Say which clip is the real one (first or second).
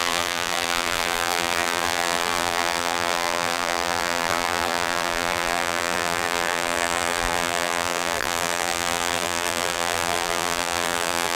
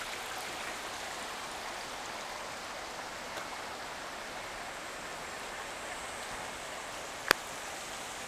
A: second